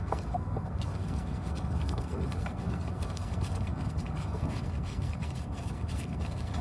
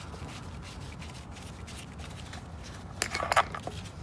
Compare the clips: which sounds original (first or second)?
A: second